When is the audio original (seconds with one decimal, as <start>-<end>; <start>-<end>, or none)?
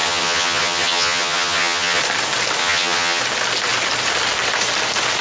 2.0-2.6; 3.2-5.2